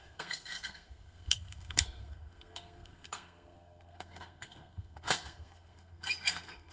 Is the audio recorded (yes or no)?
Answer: no